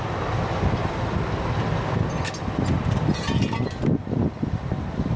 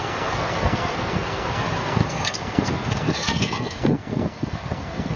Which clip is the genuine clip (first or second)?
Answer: first